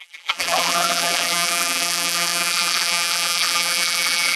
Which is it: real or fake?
fake